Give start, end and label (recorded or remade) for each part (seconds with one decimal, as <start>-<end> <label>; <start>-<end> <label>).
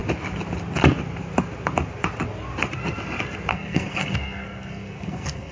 0.0-3.5 recorded; 3.5-5.5 remade